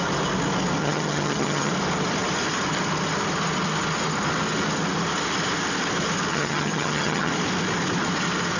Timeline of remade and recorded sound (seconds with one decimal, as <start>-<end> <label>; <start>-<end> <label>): 0.0-0.8 recorded; 0.8-1.7 remade; 1.7-6.3 recorded; 6.3-7.3 remade; 7.3-8.6 recorded